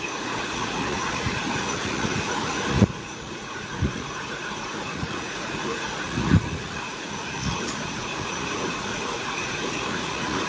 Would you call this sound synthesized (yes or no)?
yes